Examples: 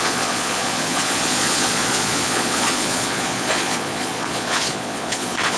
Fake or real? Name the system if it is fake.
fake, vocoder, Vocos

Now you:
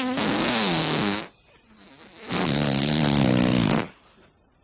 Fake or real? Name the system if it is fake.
real